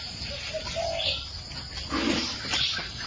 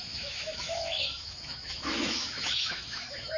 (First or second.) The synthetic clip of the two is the second